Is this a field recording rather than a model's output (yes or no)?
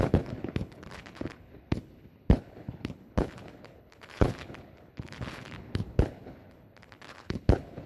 no